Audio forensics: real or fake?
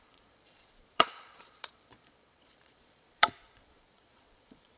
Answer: fake